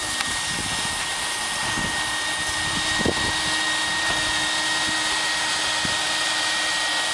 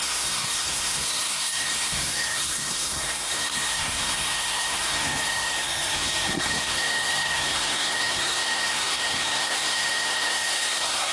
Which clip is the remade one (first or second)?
second